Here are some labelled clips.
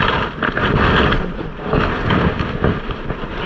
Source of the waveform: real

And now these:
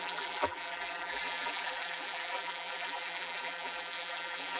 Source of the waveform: fake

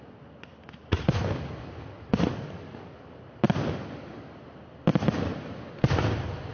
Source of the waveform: real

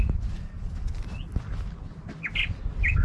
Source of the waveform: real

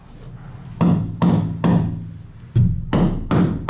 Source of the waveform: real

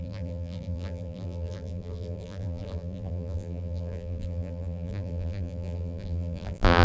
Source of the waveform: fake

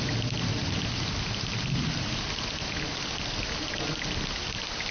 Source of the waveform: real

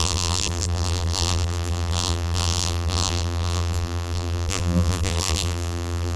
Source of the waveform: fake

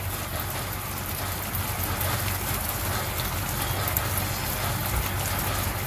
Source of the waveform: real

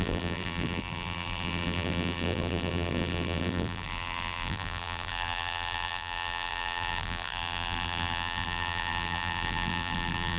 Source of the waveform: fake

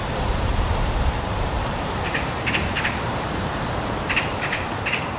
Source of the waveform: fake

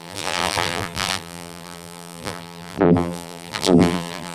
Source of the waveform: fake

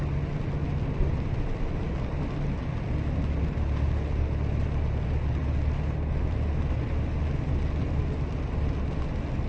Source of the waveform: real